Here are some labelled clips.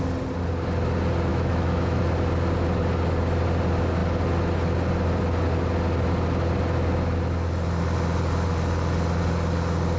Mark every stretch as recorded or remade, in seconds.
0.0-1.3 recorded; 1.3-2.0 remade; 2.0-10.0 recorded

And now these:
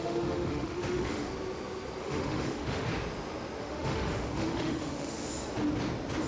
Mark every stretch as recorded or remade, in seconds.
0.0-1.3 remade; 1.3-2.0 recorded; 2.0-2.9 remade; 2.9-3.6 recorded; 3.6-5.3 remade; 5.3-6.3 recorded